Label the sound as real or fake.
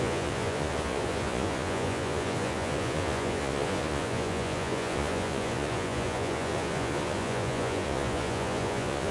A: fake